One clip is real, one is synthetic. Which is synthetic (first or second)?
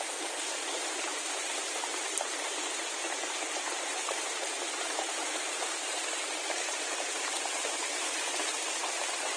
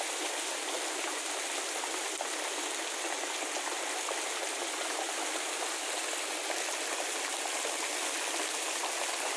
first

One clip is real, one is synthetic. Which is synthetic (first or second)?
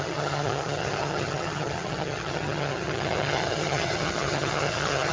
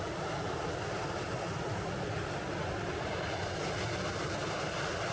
first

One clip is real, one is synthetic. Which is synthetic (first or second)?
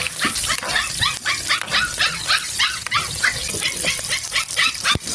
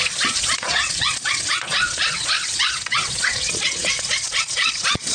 second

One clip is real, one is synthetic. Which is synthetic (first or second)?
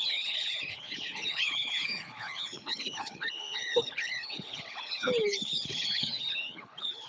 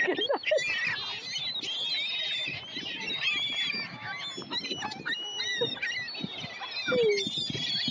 first